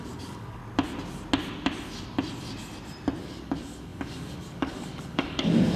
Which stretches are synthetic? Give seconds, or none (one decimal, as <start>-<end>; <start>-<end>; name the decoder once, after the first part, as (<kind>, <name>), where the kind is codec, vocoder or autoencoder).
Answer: 0.0-0.6 (codec, DAC); 3.2-5.8